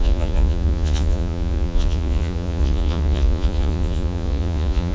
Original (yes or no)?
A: no